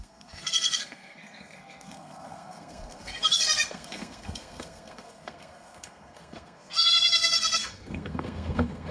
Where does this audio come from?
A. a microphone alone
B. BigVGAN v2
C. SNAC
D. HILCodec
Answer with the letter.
C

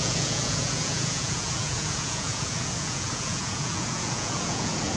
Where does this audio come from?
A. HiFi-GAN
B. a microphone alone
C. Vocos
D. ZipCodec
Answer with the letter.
C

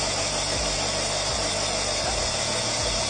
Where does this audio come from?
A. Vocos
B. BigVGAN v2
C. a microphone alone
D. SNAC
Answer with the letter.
C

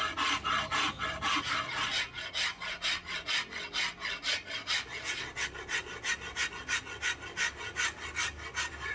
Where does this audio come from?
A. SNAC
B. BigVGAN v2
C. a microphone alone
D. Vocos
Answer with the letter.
C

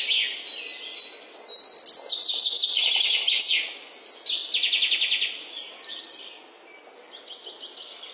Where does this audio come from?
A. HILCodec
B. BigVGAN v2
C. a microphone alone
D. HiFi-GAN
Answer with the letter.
C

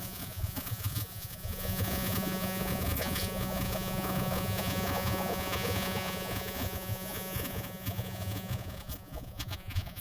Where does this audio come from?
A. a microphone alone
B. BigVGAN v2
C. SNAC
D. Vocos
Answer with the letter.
D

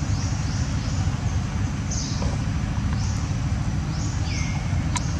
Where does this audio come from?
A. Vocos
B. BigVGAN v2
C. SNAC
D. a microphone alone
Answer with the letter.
D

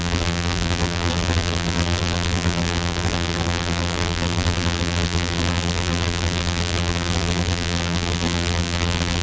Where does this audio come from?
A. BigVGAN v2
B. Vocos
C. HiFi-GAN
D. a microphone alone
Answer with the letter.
A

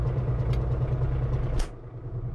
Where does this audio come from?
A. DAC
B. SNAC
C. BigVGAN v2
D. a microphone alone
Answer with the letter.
D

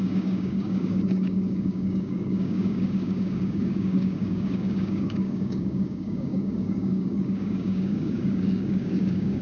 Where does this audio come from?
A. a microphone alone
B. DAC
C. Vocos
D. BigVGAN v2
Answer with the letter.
B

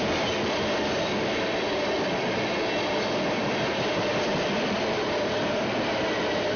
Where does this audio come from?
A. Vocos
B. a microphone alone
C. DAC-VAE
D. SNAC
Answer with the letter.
B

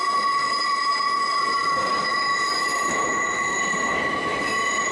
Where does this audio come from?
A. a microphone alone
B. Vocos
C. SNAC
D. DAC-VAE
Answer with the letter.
A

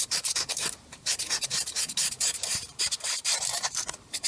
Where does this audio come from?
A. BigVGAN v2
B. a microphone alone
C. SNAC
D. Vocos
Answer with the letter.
A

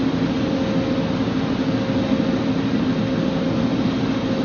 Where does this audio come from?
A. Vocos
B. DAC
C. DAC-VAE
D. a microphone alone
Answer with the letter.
D